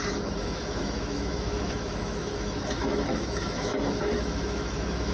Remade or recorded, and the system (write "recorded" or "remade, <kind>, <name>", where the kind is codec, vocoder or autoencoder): remade, autoencoder, DAC-VAE